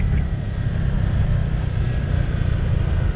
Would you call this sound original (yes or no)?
yes